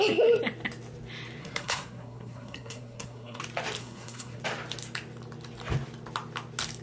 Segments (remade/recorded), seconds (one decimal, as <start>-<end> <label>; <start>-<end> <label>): 0.0-1.4 recorded; 1.4-3.4 remade; 3.4-3.8 recorded; 3.8-4.4 remade; 4.4-6.8 recorded